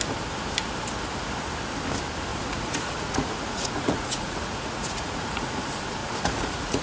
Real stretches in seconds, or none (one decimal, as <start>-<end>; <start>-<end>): 0.0-2.3; 5.6-6.0

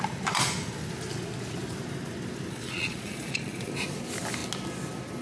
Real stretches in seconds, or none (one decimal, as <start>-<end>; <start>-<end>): 0.0-2.5; 3.7-5.2

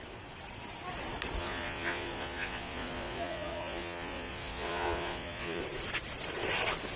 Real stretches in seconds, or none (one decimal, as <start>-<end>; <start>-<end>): 0.0-1.4; 5.6-7.0

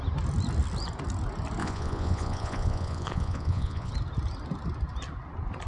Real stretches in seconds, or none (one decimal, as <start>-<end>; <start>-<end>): 0.0-1.6; 3.9-5.7

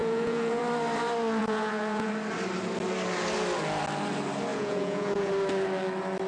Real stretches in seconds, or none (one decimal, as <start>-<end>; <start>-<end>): 0.6-1.4; 2.1-4.5; 5.3-6.3

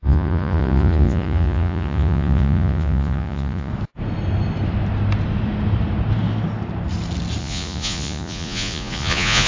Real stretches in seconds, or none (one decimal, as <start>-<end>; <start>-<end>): 3.7-7.4

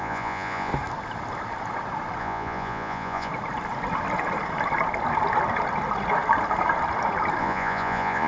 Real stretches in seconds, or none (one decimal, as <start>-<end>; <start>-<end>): 0.7-2.2; 3.3-7.4